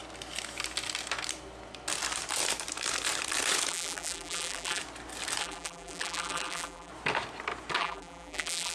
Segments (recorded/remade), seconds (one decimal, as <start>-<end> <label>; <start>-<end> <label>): 0.0-3.7 recorded; 3.7-4.8 remade; 4.8-5.4 recorded; 5.4-6.9 remade; 6.9-7.8 recorded; 7.8-8.7 remade